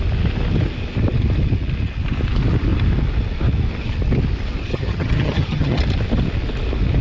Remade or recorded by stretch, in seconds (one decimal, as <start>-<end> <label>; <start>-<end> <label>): 0.0-4.7 recorded; 4.7-5.8 remade; 5.8-7.0 recorded